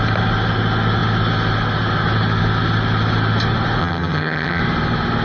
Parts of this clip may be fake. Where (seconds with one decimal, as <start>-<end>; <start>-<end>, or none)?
3.8-4.6